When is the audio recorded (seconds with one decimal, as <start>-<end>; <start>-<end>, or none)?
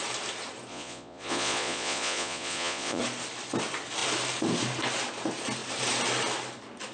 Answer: 0.0-0.7; 3.0-6.9